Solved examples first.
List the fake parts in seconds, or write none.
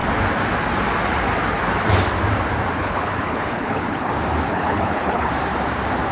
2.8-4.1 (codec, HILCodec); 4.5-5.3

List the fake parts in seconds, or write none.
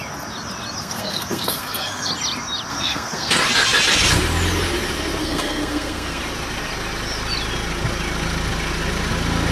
0.8-2.1 (codec, SNAC); 2.7-3.3; 5.2-6.2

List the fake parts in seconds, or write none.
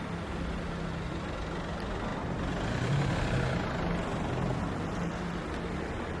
none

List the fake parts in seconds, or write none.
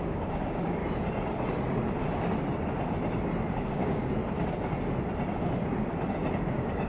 0.0-0.8 (codec, DAC); 3.5-4.2; 6.5-6.9